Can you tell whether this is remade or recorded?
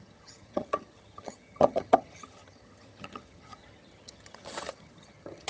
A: remade